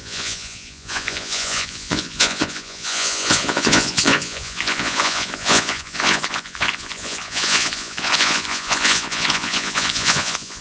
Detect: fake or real fake